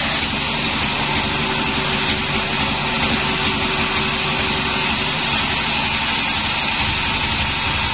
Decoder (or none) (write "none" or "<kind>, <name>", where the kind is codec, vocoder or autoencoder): none